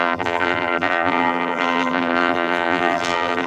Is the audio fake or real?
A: fake